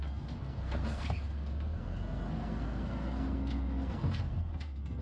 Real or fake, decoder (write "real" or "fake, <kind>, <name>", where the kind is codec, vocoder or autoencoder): fake, codec, SNAC